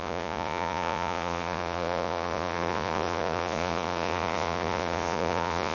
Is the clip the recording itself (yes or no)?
no